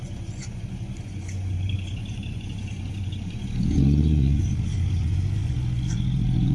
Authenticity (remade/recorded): remade